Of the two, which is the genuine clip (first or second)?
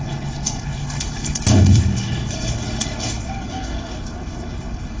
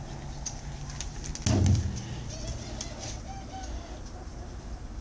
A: second